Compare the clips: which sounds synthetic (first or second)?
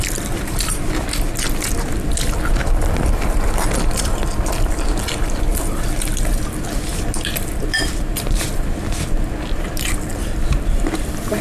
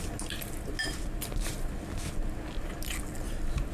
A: first